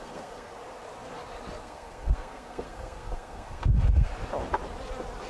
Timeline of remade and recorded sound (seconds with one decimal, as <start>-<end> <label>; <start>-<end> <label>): 0.0-0.5 remade; 0.5-1.6 recorded; 1.6-4.1 remade; 4.1-5.3 recorded